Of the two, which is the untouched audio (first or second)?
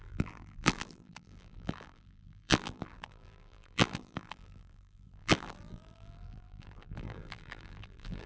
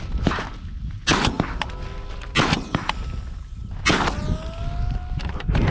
second